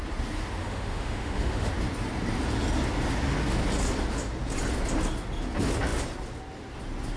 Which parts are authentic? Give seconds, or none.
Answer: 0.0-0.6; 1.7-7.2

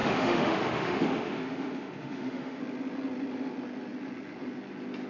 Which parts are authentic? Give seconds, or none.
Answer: 2.6-5.1

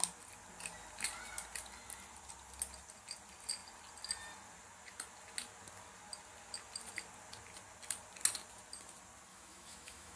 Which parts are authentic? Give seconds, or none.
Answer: 0.0-9.3

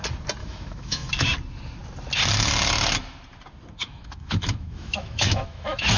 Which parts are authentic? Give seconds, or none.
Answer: 0.0-0.4; 1.1-3.8

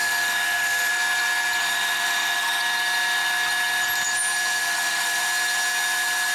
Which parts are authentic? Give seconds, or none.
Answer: 0.9-1.6; 2.6-4.6; 5.2-6.3

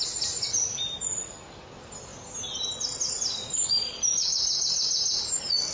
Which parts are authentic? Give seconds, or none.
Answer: 0.0-5.7